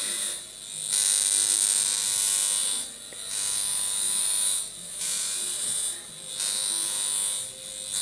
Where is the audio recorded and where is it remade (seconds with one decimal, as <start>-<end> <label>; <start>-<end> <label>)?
0.0-2.6 recorded; 2.6-6.3 remade; 6.3-8.0 recorded